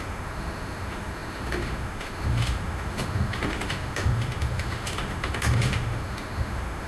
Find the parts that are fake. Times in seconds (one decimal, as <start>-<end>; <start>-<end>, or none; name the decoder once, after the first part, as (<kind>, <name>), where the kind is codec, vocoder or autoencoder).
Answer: 0.0-6.9 (autoencoder, DAC-VAE)